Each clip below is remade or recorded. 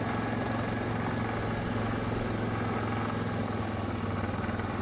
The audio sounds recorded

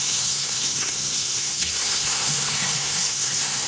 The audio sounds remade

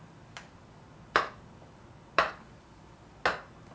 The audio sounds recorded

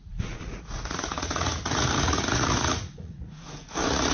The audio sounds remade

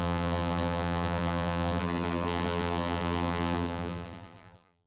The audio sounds remade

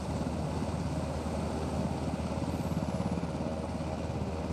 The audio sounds recorded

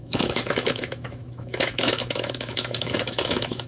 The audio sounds remade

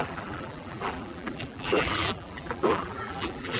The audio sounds remade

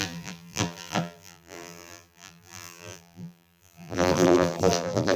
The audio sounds remade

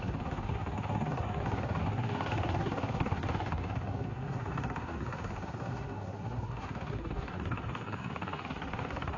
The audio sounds remade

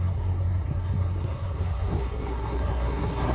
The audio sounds remade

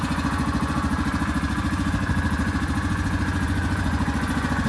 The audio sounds remade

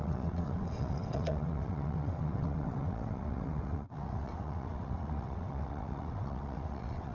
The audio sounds remade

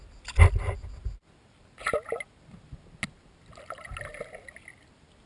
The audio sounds recorded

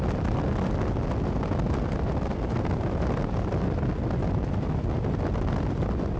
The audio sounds recorded